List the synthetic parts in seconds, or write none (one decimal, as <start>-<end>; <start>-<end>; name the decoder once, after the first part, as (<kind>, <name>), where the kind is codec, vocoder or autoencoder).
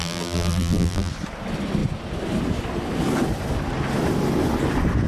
0.0-1.1 (vocoder, BigVGAN v2)